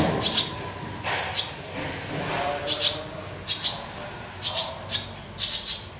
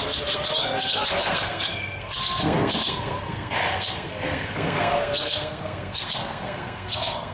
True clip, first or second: first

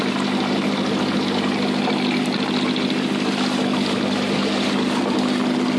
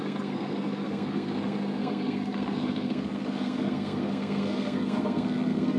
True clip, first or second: first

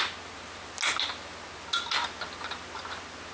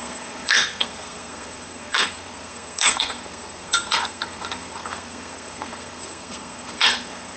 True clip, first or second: first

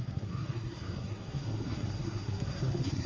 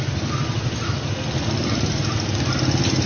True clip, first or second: second